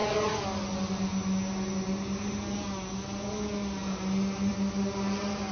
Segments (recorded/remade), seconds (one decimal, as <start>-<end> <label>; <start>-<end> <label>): 0.0-5.5 recorded